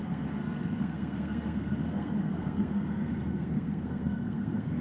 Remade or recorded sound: remade